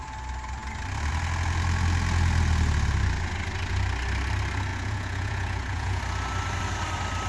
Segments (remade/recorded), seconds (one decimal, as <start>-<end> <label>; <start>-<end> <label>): 0.0-4.7 recorded; 4.7-6.0 remade; 6.0-7.3 recorded